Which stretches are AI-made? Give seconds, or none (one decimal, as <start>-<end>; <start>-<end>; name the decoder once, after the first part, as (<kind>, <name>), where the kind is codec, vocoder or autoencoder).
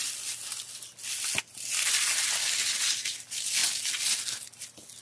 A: none